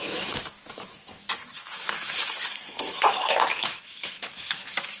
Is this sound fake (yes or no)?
yes